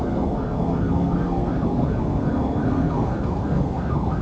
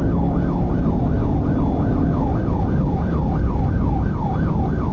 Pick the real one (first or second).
second